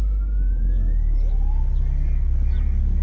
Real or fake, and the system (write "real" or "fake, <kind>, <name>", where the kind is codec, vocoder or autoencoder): real